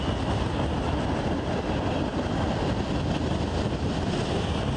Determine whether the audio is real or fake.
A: real